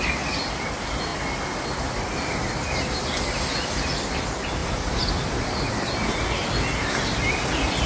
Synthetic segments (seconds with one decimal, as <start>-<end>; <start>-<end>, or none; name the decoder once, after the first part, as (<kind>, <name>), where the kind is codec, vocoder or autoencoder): none